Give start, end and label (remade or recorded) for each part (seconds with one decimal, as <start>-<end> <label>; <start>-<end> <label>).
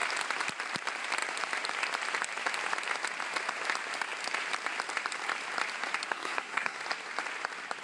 0.0-6.1 recorded; 6.1-6.8 remade; 6.8-7.8 recorded